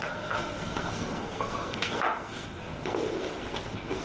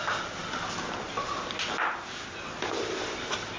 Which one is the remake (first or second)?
first